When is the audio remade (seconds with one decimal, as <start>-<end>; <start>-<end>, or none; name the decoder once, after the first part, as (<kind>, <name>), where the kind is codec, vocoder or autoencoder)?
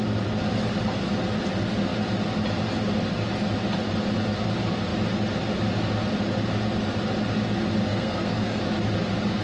7.9-8.6 (codec, SNAC)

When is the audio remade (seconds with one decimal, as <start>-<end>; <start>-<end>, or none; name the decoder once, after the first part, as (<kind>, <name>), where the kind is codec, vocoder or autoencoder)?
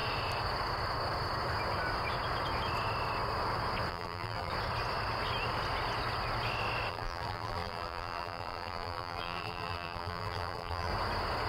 3.9-4.5 (vocoder, BigVGAN v2); 6.9-10.9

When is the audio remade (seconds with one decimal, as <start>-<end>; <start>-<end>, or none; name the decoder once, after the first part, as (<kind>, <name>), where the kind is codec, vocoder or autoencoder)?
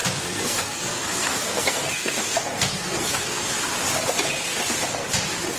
0.0-3.4 (codec, SNAC)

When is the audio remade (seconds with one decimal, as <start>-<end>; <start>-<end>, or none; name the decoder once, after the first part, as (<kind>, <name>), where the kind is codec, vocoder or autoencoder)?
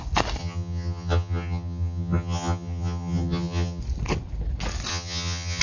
0.4-3.8 (vocoder, HiFi-GAN); 4.9-5.6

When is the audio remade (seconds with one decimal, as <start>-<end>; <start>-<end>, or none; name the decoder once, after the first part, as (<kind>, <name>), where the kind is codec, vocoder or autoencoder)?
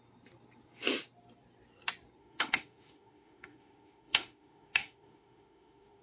2.2-6.0 (autoencoder, DAC-VAE)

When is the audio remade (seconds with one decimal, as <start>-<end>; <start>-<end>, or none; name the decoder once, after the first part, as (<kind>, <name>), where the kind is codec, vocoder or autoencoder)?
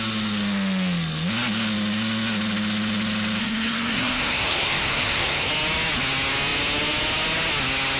3.4-5.5 (codec, SNAC)